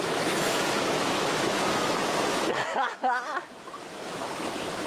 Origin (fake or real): fake